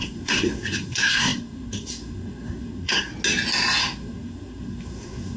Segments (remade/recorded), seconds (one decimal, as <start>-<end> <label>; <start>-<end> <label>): 0.0-3.1 remade; 3.1-3.8 recorded; 3.8-5.4 remade